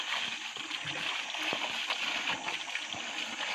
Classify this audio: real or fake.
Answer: real